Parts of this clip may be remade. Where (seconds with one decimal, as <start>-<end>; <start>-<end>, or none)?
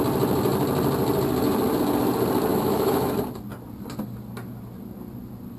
2.5-3.1